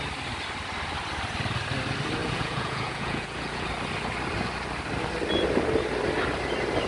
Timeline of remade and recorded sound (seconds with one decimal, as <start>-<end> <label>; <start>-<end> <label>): 0.0-2.2 recorded; 2.2-3.7 remade; 3.7-6.9 recorded